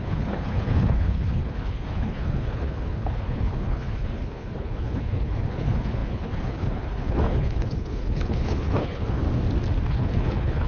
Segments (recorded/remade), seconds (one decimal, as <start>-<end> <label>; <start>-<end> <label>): 0.0-9.2 remade; 9.2-9.9 recorded; 9.9-10.7 remade